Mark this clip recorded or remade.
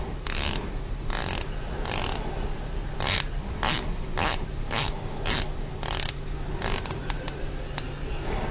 recorded